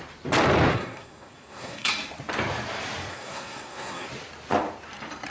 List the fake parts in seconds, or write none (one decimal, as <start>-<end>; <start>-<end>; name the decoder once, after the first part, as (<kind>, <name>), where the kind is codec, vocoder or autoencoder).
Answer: 0.7-1.9 (codec, SNAC); 3.1-4.1